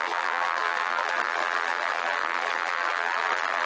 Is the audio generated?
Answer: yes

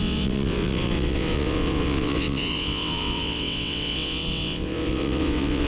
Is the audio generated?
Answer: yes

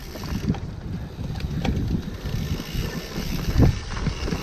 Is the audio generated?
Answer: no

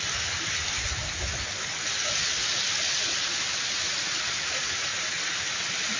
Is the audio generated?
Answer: no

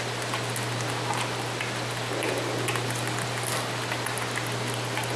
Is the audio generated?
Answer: no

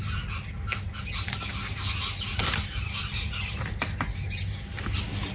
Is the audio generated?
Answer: no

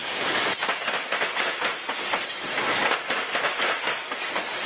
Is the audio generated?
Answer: no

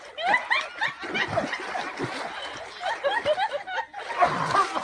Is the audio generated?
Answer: no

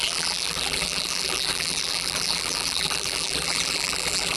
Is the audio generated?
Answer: yes